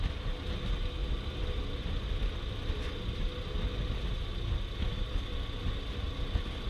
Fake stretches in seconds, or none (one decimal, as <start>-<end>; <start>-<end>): none